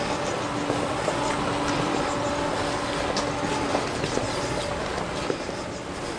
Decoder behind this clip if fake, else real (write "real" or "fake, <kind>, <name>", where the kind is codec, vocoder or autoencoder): real